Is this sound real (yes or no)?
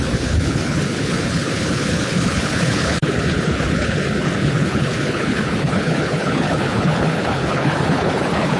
no